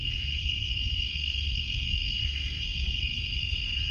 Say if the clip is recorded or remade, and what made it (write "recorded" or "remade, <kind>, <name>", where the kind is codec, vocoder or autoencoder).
remade, codec, SNAC